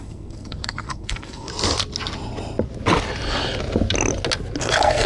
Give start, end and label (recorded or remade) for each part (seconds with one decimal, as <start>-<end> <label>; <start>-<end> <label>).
0.0-1.5 remade; 1.5-4.6 recorded; 4.6-5.1 remade